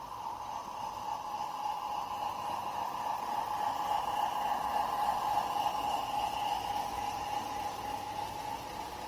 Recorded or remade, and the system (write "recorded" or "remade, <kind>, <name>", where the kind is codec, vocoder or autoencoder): recorded